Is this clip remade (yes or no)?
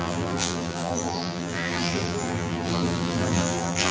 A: yes